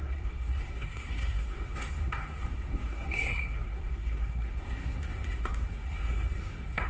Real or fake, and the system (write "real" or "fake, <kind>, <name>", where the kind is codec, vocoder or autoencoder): fake, codec, SNAC